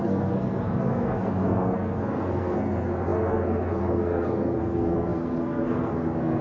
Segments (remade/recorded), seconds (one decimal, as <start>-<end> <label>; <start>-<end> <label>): 0.0-6.4 remade